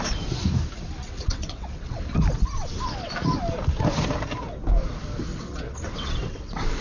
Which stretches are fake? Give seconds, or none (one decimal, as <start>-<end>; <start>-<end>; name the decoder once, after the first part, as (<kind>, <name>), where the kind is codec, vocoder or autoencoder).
1.0-2.0 (vocoder, WaveNeXt); 5.3-6.8